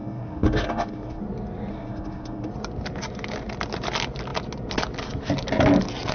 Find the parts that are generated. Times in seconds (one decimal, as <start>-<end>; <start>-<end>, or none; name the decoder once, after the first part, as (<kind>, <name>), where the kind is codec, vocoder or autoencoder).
0.0-1.2 (codec, SNAC); 1.7-2.5